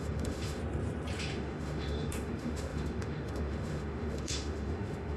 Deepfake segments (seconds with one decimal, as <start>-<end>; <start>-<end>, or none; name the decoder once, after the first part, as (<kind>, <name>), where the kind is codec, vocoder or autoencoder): 0.0-0.6 (autoencoder, DAC-VAE); 1.2-5.2